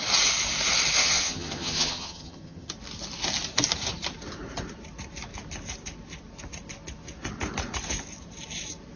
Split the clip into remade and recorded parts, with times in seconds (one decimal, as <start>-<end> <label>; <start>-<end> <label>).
0.0-1.0 recorded; 1.0-2.7 remade; 2.7-9.0 recorded